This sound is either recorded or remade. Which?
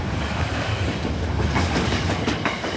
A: remade